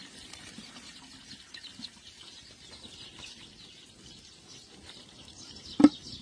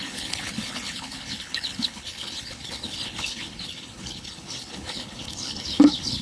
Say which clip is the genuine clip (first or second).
first